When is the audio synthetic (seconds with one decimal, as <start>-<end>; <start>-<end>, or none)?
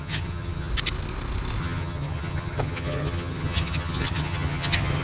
0.0-0.7; 1.6-5.0